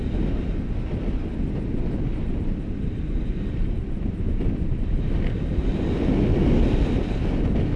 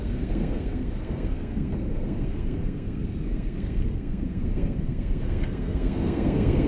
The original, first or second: first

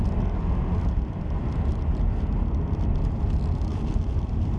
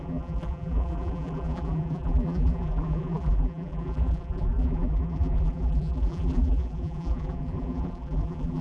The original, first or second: first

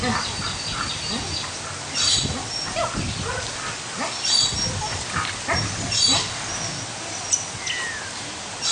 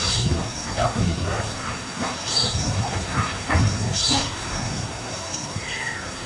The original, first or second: first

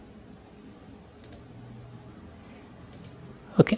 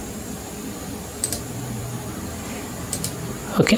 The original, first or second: first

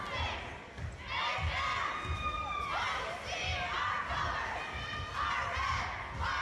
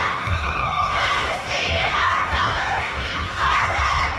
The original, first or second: first